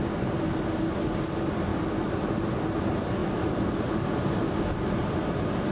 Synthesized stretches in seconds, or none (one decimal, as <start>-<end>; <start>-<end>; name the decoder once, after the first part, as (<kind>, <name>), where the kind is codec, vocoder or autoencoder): none